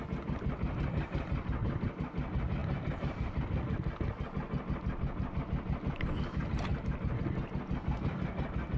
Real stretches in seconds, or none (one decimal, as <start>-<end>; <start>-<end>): 0.0-8.8